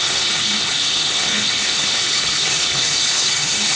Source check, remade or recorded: remade